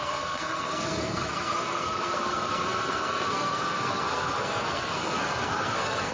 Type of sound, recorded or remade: remade